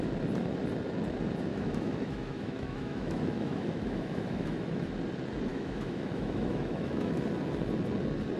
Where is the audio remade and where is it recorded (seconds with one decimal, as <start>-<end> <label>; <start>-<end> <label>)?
0.0-1.5 recorded; 1.5-4.9 remade; 4.9-5.5 recorded; 5.5-7.1 remade; 7.1-8.4 recorded